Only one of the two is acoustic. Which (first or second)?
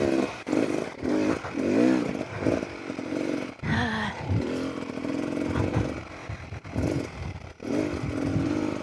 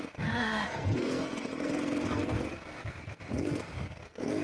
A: first